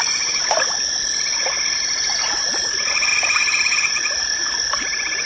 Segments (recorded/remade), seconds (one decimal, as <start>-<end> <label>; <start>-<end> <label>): 0.0-3.1 recorded; 3.1-3.9 remade; 3.9-5.3 recorded